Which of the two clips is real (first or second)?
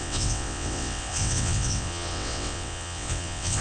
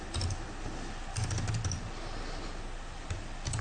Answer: second